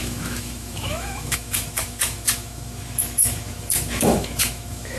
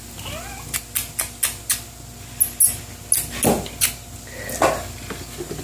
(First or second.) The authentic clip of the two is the second